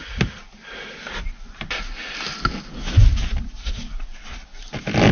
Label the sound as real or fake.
real